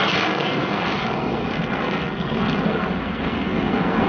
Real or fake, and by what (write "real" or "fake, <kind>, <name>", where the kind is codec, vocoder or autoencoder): fake, codec, SNAC